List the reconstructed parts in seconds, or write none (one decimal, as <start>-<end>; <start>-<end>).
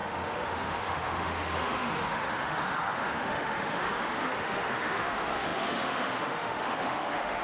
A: 0.0-7.4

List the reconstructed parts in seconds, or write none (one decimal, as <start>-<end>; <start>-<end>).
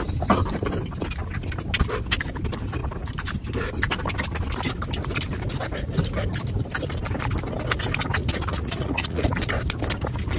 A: 8.2-9.4